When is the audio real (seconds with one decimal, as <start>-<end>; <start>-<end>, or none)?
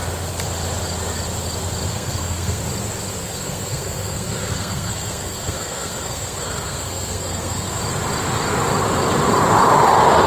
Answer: 0.0-1.9; 2.6-3.2; 7.8-10.3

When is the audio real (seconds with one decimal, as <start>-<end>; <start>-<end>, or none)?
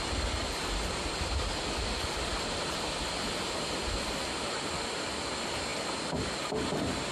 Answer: 0.0-7.1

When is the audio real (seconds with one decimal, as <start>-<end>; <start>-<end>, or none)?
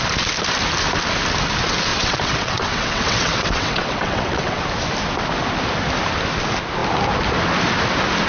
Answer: 0.0-1.9; 4.6-8.3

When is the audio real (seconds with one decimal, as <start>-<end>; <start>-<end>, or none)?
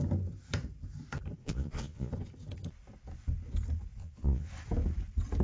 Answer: 0.0-1.4; 2.1-4.0; 4.5-5.4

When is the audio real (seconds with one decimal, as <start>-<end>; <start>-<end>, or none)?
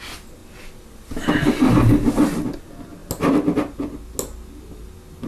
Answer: 0.0-5.3